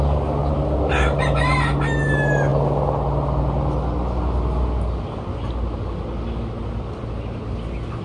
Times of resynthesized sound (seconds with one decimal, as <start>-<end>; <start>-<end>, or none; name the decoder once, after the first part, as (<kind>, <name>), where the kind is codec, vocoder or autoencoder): none